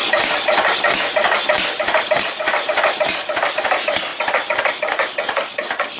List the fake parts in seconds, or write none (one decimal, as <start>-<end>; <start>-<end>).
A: 0.0-3.6; 4.1-6.0